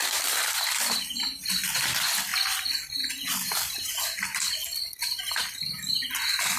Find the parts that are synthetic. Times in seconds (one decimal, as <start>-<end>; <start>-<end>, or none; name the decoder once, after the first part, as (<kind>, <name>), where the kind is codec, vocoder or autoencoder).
none